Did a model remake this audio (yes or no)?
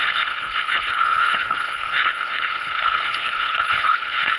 yes